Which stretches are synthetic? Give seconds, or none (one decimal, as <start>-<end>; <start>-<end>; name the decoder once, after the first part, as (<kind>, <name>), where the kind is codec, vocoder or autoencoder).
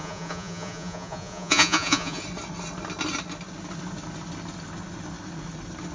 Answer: 0.0-2.2 (vocoder, Vocos)